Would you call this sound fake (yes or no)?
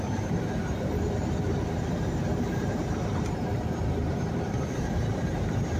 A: yes